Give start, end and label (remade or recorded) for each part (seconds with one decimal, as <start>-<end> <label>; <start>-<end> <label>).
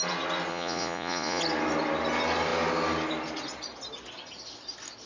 0.0-0.5 recorded; 0.5-1.4 remade; 1.4-5.1 recorded